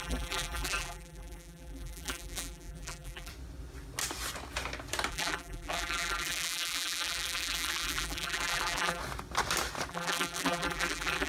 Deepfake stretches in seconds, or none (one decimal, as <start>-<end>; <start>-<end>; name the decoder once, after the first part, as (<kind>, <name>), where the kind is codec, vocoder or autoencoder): 0.0-3.3 (vocoder, BigVGAN v2); 5.1-9.0; 9.9-11.3

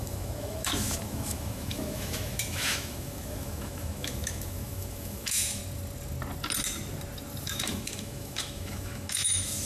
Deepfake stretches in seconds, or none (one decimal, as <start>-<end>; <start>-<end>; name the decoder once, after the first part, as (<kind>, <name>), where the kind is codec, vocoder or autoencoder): 0.0-5.6 (autoencoder, DAC-VAE); 7.4-9.7

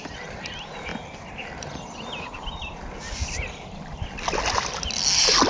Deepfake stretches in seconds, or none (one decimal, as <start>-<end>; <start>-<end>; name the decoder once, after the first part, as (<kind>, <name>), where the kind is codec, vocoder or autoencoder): none

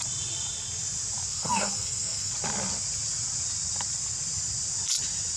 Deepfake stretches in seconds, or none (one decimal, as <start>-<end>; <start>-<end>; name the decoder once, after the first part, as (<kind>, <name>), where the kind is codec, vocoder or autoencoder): 1.3-2.3 (codec, SNAC)

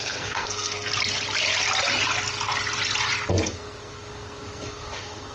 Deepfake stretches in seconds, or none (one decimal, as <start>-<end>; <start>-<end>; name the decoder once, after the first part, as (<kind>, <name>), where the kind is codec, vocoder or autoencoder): 0.0-0.9 (codec, SNAC); 3.3-5.3

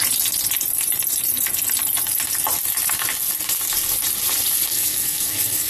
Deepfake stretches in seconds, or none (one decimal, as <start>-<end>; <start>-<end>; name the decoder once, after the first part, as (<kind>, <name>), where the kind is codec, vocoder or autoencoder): 4.7-5.7 (codec, SNAC)

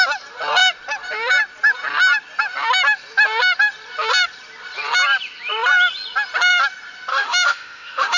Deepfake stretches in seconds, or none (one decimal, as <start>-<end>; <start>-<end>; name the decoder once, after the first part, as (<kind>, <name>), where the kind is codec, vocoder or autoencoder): 7.1-8.2 (autoencoder, DAC-VAE)

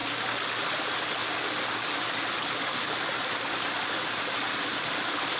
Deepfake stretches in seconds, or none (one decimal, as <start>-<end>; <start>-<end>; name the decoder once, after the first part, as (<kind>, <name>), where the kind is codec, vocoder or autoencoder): none